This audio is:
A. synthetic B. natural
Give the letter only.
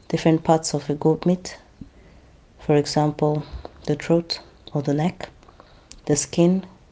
B